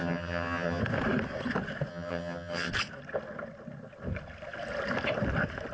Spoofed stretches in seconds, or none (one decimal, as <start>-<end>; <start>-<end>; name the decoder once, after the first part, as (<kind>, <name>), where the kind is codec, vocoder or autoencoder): 0.0-0.8 (vocoder, HiFi-GAN); 1.9-2.7